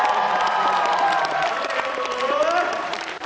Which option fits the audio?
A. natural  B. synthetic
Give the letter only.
B